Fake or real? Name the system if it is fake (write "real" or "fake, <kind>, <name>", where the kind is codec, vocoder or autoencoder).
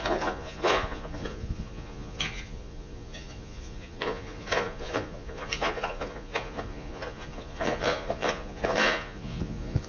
fake, vocoder, Vocos